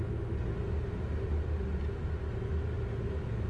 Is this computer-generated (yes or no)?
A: no